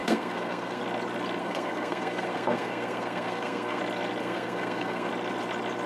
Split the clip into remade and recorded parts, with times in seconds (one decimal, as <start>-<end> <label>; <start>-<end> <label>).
0.0-0.8 remade; 0.8-1.4 recorded; 1.4-3.8 remade; 3.8-4.2 recorded; 4.2-5.1 remade; 5.1-5.9 recorded